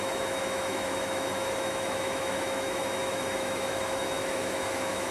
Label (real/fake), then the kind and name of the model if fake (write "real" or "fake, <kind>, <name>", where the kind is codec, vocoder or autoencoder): fake, autoencoder, DAC-VAE